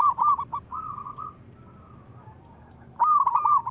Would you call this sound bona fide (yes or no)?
yes